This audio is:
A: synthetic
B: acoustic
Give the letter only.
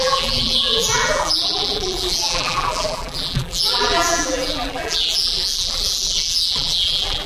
A